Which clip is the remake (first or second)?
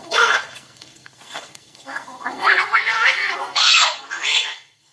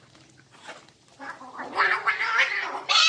first